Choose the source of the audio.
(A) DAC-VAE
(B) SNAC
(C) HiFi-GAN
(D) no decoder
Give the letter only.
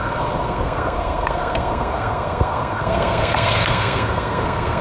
B